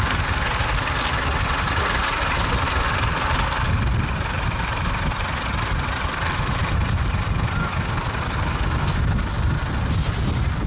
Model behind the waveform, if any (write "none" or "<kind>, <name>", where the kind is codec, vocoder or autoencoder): none